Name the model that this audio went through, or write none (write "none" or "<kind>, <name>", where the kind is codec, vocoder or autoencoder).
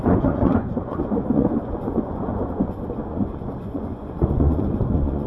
vocoder, Vocos